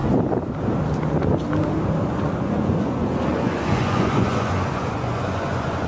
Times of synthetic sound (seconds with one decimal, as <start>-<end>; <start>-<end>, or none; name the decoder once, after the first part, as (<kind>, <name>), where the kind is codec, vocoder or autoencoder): 2.1-5.9 (vocoder, Vocos)